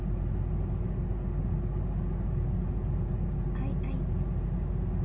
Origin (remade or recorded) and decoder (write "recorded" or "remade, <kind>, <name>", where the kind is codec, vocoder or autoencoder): recorded